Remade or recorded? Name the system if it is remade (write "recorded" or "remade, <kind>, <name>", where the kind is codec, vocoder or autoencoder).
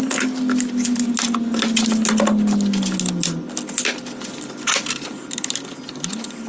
recorded